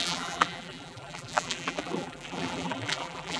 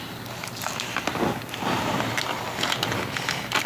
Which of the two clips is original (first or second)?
second